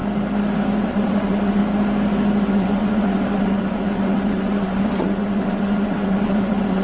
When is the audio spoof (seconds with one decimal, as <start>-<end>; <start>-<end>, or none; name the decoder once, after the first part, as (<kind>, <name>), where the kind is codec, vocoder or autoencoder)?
0.8-1.6 (vocoder, WaveNeXt); 2.5-6.8